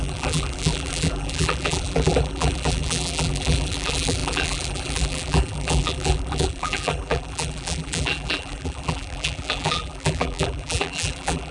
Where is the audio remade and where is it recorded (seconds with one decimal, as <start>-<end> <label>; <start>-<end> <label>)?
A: 0.0-11.5 remade